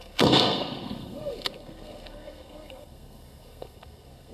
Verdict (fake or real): fake